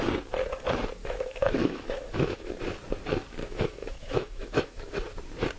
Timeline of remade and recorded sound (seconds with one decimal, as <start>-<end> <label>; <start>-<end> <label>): 0.0-1.0 recorded; 1.0-2.5 remade; 2.5-3.4 recorded; 3.4-4.9 remade; 4.9-5.6 recorded